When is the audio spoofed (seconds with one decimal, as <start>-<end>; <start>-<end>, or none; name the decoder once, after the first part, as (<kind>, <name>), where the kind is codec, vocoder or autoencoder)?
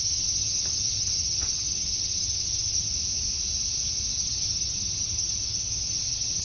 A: 0.0-2.9 (vocoder, HiFi-GAN); 4.2-6.4